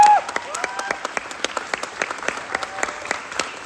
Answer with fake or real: fake